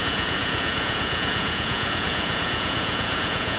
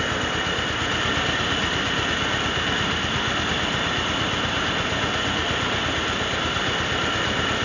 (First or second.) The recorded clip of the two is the second